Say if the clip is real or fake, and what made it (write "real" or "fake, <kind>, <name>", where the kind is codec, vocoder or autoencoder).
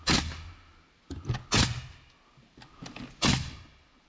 real